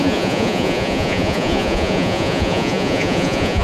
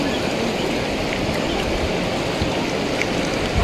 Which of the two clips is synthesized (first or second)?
first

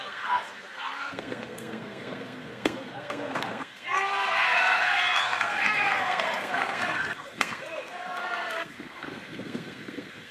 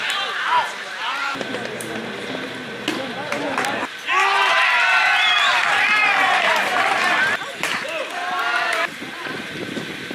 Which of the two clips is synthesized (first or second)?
first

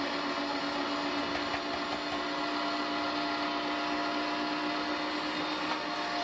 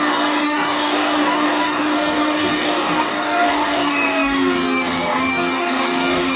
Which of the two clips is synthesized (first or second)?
second